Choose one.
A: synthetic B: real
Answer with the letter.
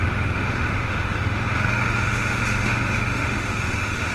A